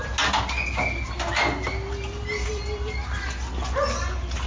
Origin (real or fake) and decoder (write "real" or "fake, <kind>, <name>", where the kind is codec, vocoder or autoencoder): real